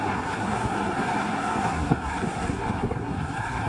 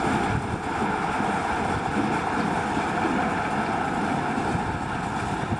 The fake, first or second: first